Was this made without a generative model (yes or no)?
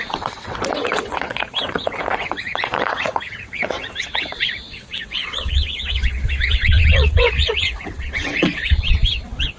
no